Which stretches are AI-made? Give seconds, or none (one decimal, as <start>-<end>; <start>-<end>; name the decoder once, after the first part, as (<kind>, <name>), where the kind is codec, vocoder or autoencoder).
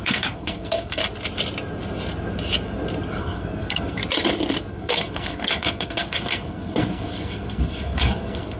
0.0-1.0 (codec, SNAC); 3.2-4.0; 4.7-8.6